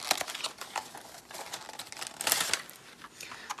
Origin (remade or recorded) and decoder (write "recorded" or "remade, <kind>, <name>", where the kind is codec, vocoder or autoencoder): recorded